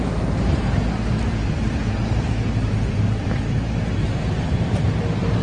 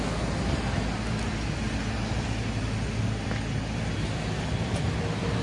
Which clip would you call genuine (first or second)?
second